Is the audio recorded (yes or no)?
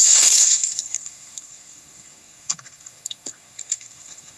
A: no